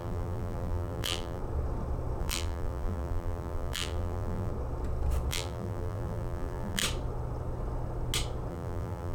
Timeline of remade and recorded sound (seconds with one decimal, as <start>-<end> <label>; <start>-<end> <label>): 0.0-1.4 remade; 1.4-2.2 recorded; 2.2-4.5 remade; 4.5-5.3 recorded; 5.3-6.8 remade; 6.8-8.5 recorded; 8.5-9.1 remade